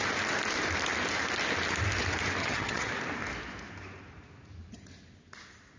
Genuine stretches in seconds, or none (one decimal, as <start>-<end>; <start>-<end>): 0.0-2.4; 2.9-5.8